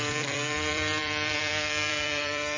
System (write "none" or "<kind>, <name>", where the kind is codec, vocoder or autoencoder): vocoder, BigVGAN v2